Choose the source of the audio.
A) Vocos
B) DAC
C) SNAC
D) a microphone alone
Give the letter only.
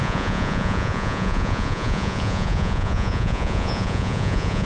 A